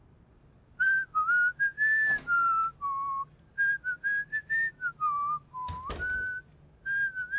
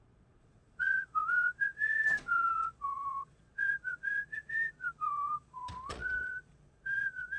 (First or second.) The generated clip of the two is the second